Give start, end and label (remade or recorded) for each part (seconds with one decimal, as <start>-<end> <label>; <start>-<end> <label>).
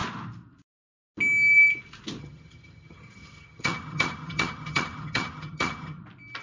0.0-2.2 recorded; 2.2-6.0 remade; 6.0-6.4 recorded